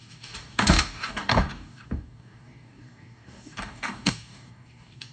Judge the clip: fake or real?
fake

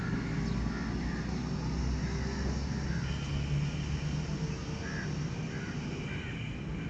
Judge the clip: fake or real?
real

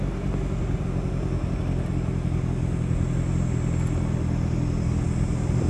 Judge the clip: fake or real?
real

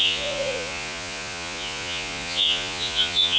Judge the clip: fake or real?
fake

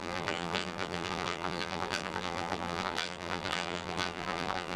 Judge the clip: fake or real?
fake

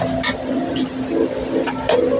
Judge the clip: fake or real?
real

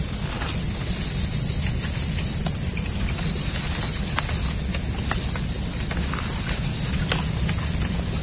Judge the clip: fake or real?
real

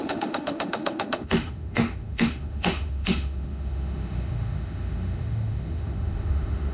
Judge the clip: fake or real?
fake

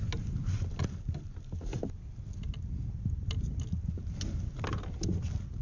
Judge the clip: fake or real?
real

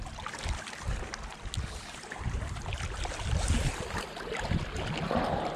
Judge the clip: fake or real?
real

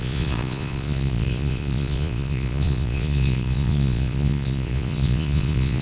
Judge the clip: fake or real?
fake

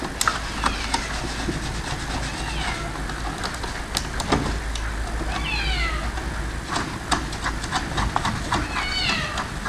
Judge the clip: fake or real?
real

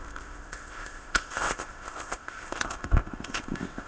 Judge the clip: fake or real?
fake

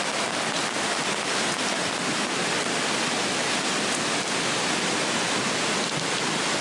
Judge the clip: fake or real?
real